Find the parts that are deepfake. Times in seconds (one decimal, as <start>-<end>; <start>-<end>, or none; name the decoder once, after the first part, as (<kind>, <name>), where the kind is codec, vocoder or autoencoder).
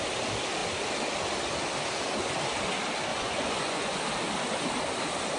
3.1-4.0 (vocoder, Vocos)